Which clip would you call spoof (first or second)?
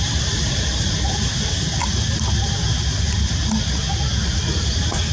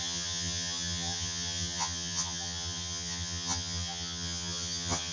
second